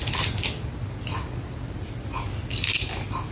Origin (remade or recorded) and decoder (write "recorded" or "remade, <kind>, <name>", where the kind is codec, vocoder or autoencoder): recorded